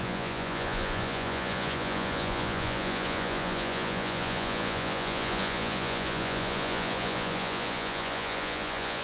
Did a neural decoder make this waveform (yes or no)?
yes